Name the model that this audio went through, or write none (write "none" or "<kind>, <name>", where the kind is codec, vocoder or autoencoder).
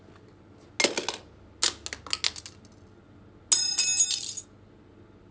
none